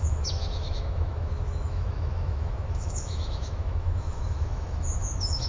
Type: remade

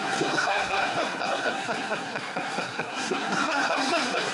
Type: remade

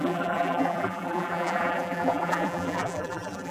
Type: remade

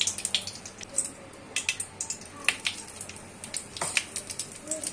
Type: recorded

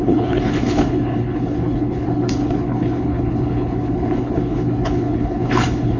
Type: remade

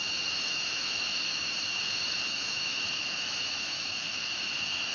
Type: remade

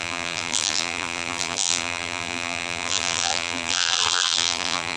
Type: remade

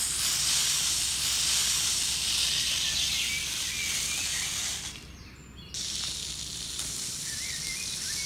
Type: recorded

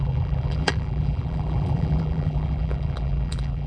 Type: remade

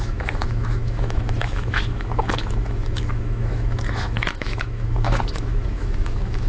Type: remade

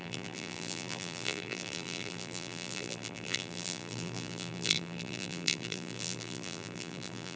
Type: remade